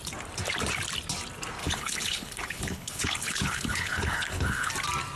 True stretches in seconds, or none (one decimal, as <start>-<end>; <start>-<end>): 0.0-1.6; 4.7-5.2